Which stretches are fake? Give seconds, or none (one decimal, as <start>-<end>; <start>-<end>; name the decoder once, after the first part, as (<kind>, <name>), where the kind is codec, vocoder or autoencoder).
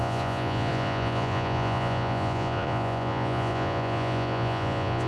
0.0-5.1 (vocoder, Vocos)